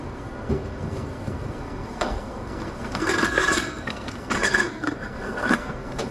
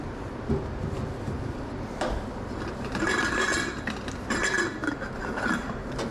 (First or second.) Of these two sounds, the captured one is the second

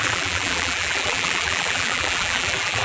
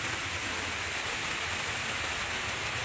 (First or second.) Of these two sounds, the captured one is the second